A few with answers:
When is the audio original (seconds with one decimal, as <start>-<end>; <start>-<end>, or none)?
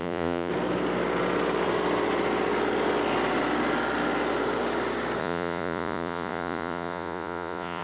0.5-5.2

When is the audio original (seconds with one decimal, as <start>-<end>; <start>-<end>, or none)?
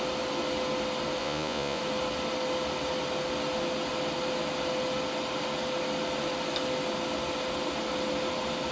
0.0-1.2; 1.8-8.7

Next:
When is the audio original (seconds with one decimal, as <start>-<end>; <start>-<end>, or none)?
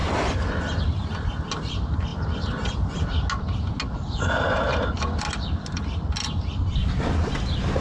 0.0-7.8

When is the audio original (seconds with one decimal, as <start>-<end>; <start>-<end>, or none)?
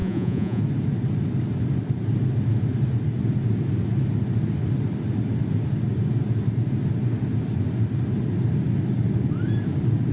0.6-10.1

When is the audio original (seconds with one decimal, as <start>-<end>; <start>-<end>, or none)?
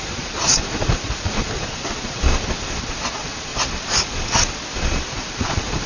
2.2-2.8; 3.5-5.1